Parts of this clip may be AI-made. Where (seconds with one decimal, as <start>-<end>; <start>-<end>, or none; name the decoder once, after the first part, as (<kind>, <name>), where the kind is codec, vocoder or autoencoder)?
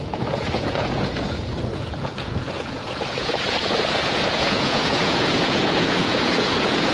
0.0-6.9 (vocoder, Vocos)